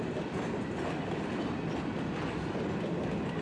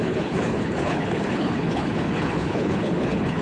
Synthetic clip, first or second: second